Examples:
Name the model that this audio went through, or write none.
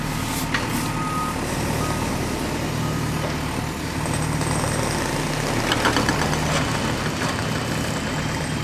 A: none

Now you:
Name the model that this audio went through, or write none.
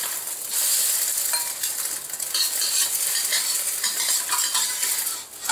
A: none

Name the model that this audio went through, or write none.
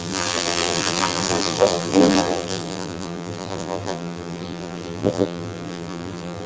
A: vocoder, BigVGAN v2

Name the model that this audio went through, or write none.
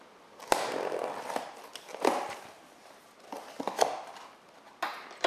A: none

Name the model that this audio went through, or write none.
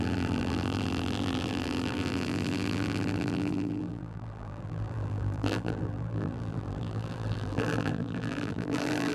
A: vocoder, BigVGAN v2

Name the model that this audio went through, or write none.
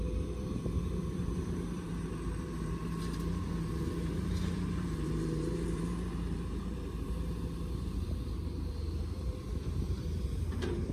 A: vocoder, BigVGAN v2